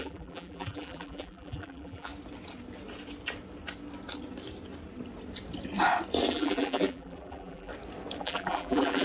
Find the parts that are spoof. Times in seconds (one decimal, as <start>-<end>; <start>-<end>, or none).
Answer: 0.0-2.1; 6.3-7.7; 8.2-9.0